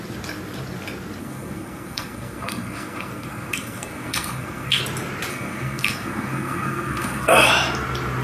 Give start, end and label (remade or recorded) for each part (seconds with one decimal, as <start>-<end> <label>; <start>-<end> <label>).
0.0-1.2 recorded; 1.2-4.8 remade; 4.8-5.3 recorded; 5.3-7.5 remade; 7.5-8.2 recorded